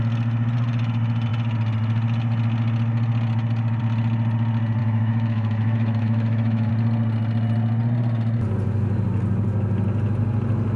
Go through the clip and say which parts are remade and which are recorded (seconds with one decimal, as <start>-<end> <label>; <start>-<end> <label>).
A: 0.0-4.8 recorded; 4.8-6.7 remade; 6.7-10.8 recorded